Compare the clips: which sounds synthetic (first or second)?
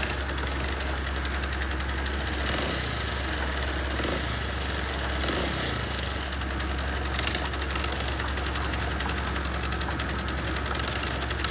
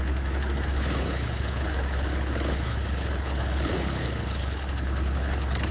second